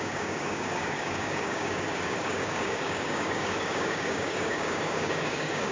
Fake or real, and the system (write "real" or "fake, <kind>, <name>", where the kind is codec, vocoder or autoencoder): fake, codec, DAC